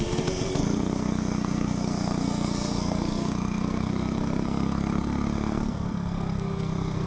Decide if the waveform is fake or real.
fake